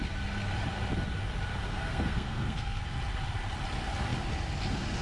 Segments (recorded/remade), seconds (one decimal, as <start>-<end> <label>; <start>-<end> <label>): 0.0-1.7 recorded; 1.7-2.8 remade; 2.8-5.0 recorded